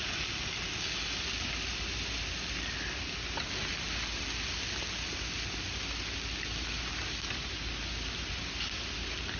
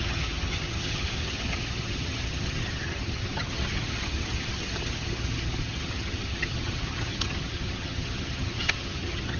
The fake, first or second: second